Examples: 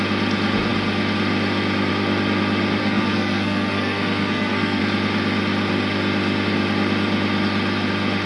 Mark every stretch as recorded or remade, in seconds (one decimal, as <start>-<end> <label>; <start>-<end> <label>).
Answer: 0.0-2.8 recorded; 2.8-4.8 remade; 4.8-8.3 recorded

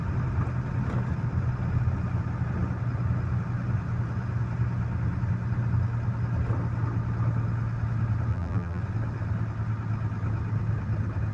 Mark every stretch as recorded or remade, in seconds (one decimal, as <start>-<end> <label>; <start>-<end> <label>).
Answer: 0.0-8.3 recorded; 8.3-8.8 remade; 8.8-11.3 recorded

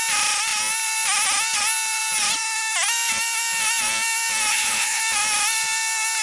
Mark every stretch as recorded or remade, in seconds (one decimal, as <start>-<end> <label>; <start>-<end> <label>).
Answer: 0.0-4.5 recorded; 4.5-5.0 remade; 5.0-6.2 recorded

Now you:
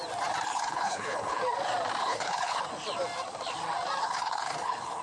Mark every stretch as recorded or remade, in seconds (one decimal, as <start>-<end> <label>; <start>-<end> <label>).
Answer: 0.0-0.5 recorded; 0.5-1.4 remade; 1.4-2.0 recorded; 2.0-2.6 remade; 2.6-4.0 recorded; 4.0-5.0 remade

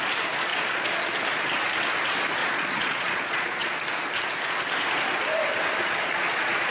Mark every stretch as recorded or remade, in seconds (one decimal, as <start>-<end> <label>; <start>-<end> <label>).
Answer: 0.0-0.5 recorded; 0.5-1.1 remade; 1.1-2.4 recorded; 2.4-3.7 remade; 3.7-5.8 recorded; 5.8-6.7 remade

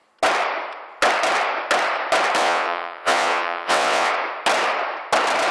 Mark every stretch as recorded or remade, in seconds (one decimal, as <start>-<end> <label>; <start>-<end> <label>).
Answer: 0.0-2.4 recorded; 2.4-4.1 remade; 4.1-5.5 recorded

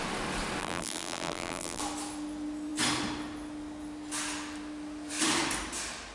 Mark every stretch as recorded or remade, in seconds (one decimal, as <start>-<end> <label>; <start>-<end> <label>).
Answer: 0.0-0.6 recorded; 0.6-1.8 remade; 1.8-6.1 recorded